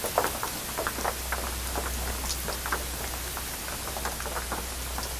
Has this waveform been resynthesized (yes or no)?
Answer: no